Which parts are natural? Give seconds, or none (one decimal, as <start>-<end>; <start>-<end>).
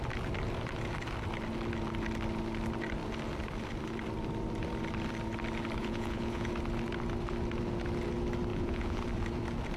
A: 0.0-5.8; 6.5-8.5; 9.0-9.8